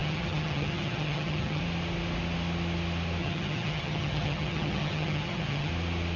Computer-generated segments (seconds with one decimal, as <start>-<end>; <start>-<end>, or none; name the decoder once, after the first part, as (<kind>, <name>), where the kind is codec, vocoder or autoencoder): 0.0-1.6 (vocoder, HiFi-GAN); 3.2-5.7